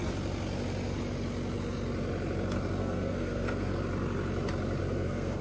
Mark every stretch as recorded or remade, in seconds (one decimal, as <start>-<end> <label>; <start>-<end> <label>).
0.0-2.8 recorded; 2.8-3.8 remade; 3.8-4.8 recorded; 4.8-5.4 remade